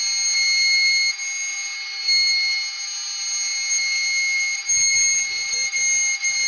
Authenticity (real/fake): real